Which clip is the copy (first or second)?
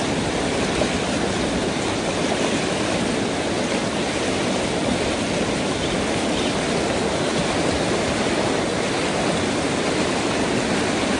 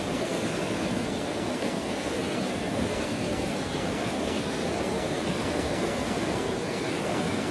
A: second